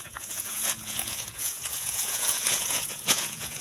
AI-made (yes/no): yes